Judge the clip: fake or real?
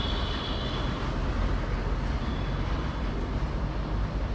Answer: real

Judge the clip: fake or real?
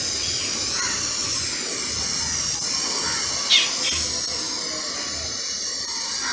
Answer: real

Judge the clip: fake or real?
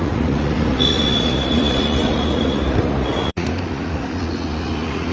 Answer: fake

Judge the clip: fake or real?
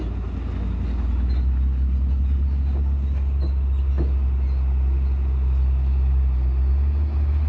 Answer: real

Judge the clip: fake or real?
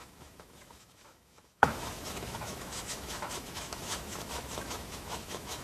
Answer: fake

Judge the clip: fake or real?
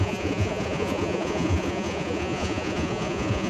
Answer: fake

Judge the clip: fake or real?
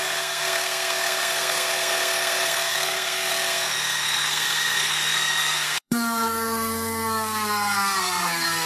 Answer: fake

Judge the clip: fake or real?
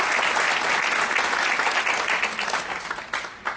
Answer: real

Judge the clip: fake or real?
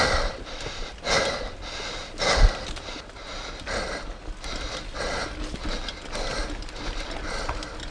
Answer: real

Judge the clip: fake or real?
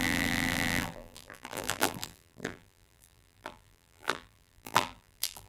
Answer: fake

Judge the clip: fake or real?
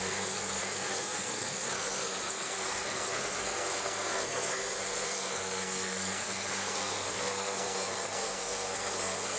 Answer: fake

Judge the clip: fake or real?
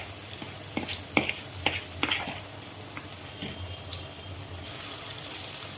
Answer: real